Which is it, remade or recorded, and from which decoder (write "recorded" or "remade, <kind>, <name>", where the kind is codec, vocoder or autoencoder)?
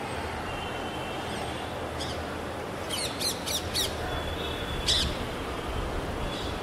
recorded